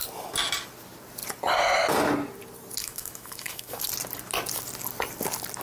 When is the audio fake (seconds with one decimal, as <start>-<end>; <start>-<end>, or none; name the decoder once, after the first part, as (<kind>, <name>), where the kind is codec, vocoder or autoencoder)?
2.8-3.8 (autoencoder, DAC-VAE)